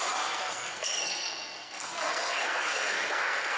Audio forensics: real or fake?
fake